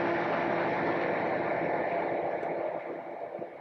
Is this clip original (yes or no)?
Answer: yes